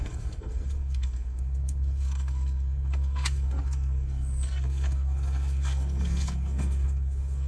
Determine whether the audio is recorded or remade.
remade